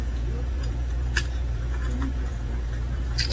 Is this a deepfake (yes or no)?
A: yes